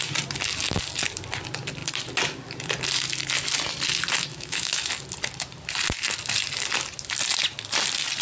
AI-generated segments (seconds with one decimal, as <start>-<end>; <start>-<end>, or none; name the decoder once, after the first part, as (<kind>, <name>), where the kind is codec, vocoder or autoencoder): 4.3-4.9 (autoencoder, DAC-VAE)